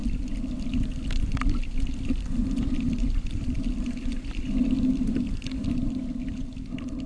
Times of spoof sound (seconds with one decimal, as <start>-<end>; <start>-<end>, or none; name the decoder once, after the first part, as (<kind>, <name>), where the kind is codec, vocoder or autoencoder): 0.0-7.1 (vocoder, BigVGAN v2)